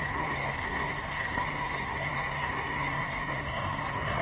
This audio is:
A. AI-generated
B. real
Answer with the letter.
A